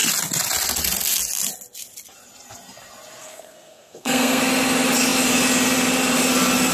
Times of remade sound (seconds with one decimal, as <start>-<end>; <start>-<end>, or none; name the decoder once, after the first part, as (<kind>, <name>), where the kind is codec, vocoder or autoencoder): 3.2-4.4 (codec, SNAC)